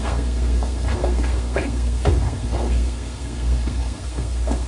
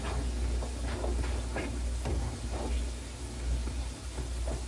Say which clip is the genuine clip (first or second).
second